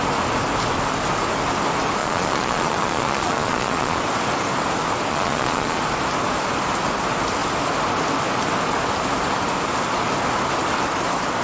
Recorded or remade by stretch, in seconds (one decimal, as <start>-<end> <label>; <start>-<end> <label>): 0.0-2.0 recorded; 2.0-4.0 remade; 4.0-5.1 recorded; 5.1-5.8 remade; 5.8-11.4 recorded